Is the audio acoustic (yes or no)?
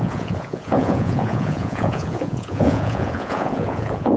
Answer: no